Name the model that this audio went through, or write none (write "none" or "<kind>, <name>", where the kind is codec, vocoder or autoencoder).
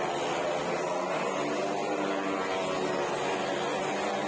none